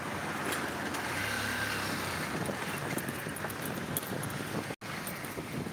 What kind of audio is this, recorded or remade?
recorded